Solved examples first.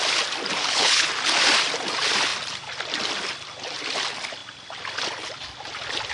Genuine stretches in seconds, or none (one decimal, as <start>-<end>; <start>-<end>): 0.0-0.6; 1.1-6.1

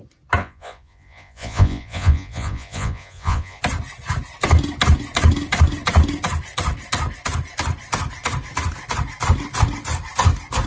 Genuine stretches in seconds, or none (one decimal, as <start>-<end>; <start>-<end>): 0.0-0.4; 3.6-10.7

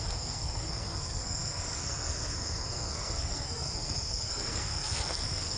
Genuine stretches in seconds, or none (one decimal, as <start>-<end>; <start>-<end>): none

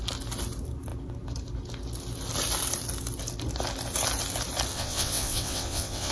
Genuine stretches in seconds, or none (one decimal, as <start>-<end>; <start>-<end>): 0.0-4.7

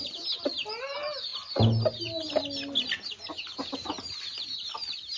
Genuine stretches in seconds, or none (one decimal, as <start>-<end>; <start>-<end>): 0.0-5.2